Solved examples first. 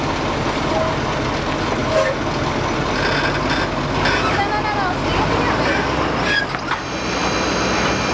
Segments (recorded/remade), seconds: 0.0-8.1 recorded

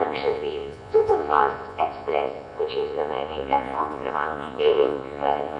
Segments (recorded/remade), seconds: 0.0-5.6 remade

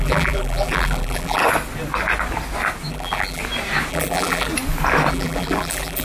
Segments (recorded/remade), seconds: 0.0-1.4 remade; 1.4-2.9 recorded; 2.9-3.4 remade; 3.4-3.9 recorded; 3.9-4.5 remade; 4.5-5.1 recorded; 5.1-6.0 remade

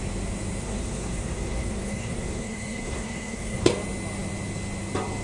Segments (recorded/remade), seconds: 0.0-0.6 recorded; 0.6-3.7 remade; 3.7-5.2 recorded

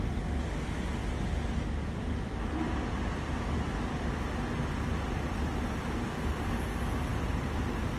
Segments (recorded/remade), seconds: 0.0-8.0 recorded